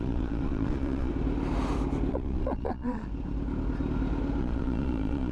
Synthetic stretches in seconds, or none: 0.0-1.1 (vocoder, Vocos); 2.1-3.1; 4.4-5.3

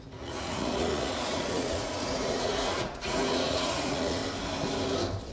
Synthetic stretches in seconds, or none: 0.0-4.2 (vocoder, Vocos)

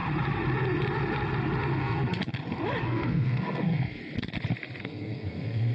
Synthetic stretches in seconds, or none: 1.8-2.2 (codec, SNAC); 2.8-4.0; 4.8-5.7

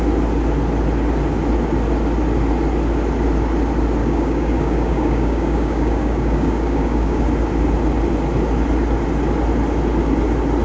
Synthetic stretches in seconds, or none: 4.0-7.2 (codec, DAC)

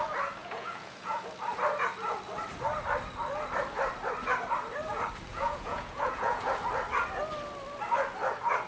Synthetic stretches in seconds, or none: 0.4-1.2 (vocoder, Vocos); 5.3-6.5

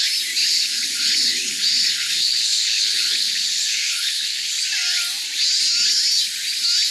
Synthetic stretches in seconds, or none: 0.4-4.5 (codec, HILCodec)

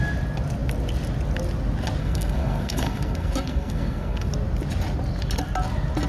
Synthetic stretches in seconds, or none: 2.0-4.3 (codec, SNAC)